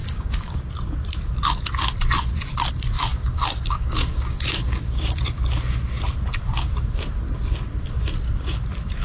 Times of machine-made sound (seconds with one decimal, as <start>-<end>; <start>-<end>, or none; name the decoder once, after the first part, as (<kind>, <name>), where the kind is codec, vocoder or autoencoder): 0.0-0.6 (codec, DAC); 3.1-5.2